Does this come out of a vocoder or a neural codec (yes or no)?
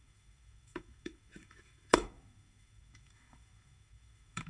yes